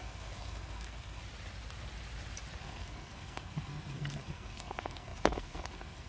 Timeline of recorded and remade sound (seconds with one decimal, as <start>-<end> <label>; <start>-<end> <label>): 0.0-1.2 remade; 1.2-2.6 recorded; 2.6-6.1 remade